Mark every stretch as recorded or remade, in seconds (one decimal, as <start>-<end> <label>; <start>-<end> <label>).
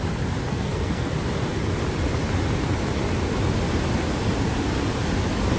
0.0-0.5 recorded; 0.5-1.1 remade; 1.1-5.6 recorded